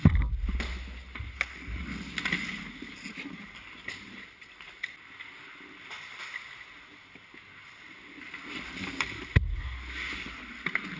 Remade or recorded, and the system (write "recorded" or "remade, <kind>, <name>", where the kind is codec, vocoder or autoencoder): recorded